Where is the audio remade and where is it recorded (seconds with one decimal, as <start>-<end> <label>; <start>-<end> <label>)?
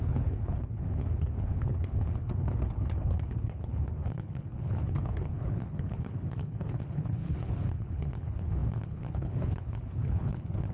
0.0-10.7 remade